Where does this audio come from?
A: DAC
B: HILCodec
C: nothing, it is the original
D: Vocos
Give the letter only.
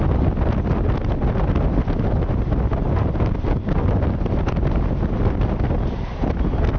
C